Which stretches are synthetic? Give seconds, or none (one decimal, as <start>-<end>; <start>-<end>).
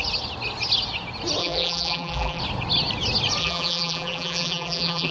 1.4-2.4; 3.4-5.1